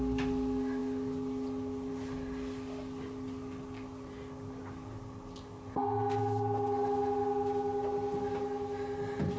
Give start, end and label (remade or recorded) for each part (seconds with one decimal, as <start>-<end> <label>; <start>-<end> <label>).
0.0-9.4 recorded